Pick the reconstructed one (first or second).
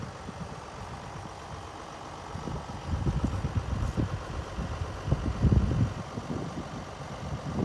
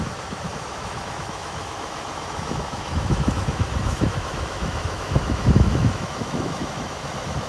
second